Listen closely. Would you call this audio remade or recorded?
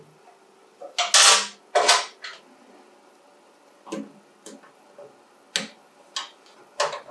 recorded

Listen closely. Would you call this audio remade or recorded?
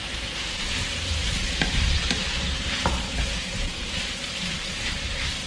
remade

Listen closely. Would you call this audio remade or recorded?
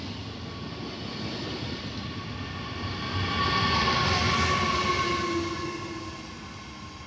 recorded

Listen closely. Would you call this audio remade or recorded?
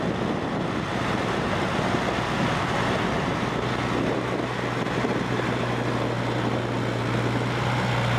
recorded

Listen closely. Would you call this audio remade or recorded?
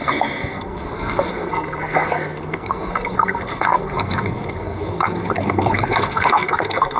remade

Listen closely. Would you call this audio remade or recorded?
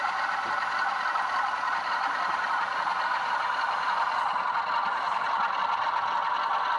recorded